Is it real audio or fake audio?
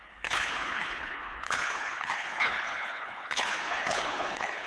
fake